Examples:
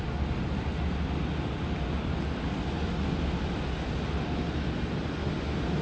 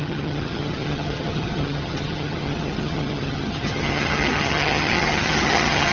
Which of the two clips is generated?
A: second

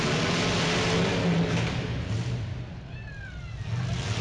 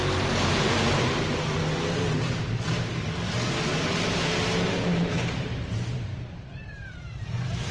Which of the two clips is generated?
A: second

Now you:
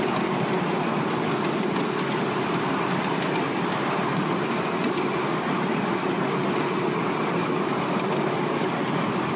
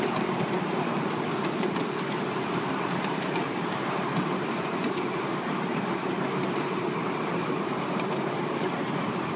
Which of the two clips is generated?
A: second